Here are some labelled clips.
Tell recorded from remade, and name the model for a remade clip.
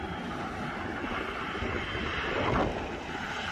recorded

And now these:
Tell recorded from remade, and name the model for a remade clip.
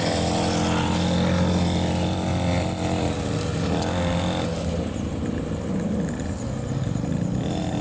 recorded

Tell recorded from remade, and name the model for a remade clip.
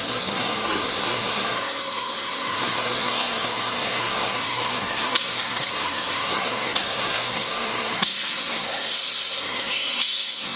remade, codec, SNAC